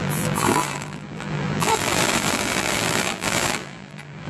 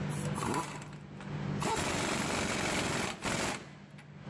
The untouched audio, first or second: second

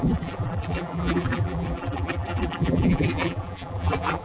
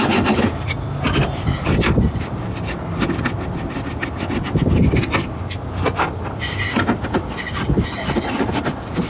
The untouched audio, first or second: second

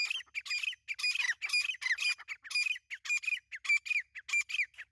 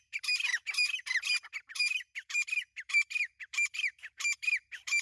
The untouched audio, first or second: first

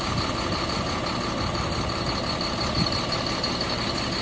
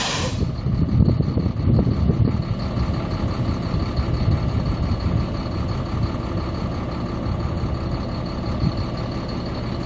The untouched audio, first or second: second